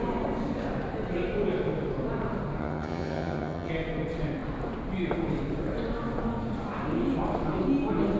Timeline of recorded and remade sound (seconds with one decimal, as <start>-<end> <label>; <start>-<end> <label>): 0.0-2.6 recorded; 2.6-3.7 remade; 3.7-8.2 recorded